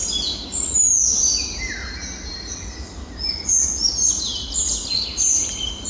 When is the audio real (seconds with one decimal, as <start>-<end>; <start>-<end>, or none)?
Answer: 0.0-5.9